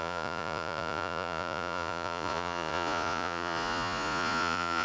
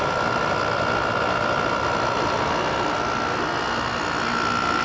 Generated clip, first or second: first